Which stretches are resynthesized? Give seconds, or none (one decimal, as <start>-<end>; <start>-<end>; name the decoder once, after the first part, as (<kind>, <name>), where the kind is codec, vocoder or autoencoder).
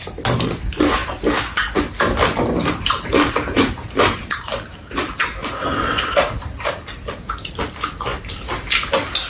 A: 2.6-7.6 (vocoder, BigVGAN v2)